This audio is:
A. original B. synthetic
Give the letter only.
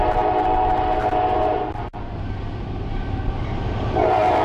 B